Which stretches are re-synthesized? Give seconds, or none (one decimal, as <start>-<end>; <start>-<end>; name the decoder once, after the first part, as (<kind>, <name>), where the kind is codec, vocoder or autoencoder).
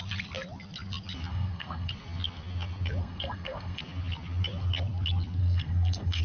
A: 1.3-1.9 (codec, SNAC); 3.0-3.8; 5.4-6.2